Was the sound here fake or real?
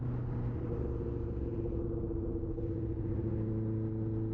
real